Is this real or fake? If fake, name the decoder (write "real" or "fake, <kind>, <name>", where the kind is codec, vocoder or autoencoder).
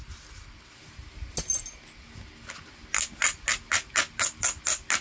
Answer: real